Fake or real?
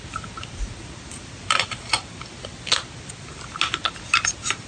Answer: real